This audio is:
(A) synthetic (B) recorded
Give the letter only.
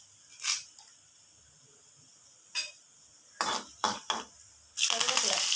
B